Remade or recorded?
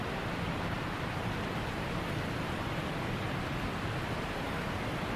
recorded